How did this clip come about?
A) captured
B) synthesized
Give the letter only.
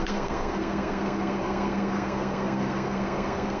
B